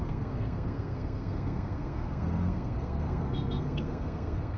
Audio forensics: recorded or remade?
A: remade